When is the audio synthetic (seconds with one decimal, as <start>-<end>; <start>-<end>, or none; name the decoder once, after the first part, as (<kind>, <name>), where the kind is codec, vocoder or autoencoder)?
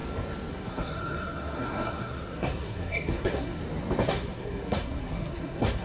0.5-3.6 (codec, SNAC); 4.1-5.8